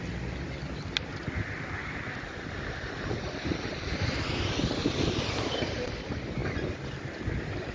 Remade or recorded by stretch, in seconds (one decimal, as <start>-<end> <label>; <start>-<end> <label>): 0.0-1.8 recorded; 1.8-4.2 remade; 4.2-4.8 recorded; 4.8-5.7 remade; 5.7-7.7 recorded